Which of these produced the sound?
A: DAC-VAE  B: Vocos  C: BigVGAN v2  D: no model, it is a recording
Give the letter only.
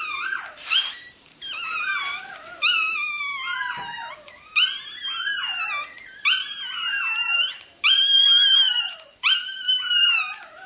C